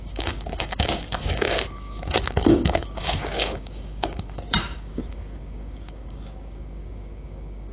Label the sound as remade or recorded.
remade